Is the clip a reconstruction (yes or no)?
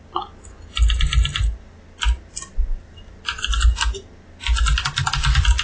no